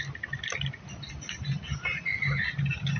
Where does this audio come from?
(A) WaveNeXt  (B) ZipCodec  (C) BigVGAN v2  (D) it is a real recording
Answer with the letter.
D